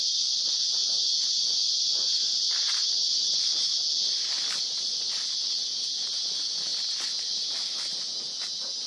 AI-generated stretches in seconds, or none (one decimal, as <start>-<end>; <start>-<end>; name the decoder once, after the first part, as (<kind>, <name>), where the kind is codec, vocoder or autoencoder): 2.8-3.5 (vocoder, BigVGAN v2)